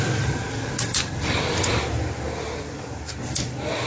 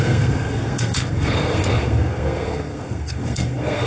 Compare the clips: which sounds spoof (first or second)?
second